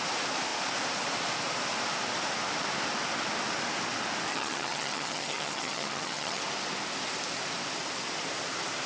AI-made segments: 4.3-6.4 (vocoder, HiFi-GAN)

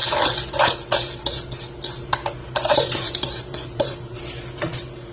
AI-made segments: 0.0-0.6 (vocoder, BigVGAN v2); 2.4-4.2

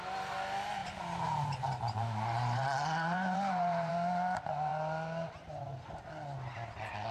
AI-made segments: 0.8-3.9 (vocoder, BigVGAN v2)